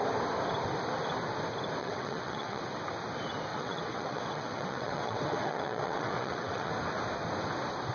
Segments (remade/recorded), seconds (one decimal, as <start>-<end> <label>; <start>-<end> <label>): 0.0-1.8 recorded; 1.8-2.6 remade; 2.6-3.5 recorded; 3.5-6.7 remade; 6.7-7.9 recorded